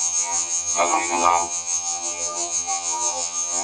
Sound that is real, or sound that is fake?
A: fake